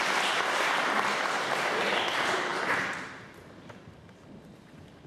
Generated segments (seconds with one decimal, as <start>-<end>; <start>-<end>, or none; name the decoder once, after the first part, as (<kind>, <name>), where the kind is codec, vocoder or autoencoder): none